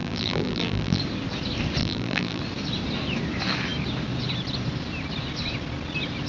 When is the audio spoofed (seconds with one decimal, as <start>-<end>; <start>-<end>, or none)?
0.0-1.0; 1.8-2.4